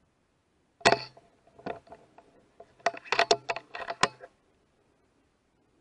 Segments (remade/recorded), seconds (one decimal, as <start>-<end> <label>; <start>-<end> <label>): 0.0-5.8 recorded